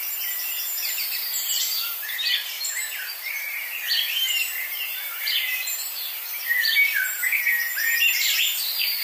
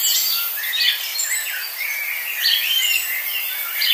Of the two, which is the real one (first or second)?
second